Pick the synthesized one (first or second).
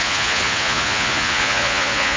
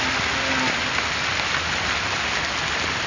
first